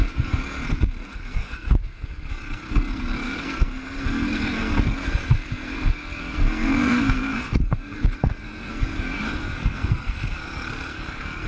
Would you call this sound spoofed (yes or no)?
yes